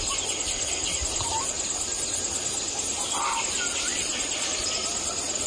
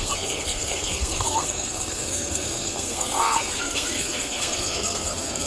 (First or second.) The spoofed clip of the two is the second